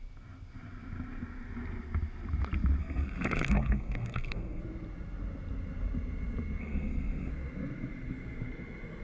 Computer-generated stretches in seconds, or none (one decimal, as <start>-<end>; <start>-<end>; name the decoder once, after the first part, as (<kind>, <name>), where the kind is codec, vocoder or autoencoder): 2.8-4.6 (codec, SNAC); 6.6-7.3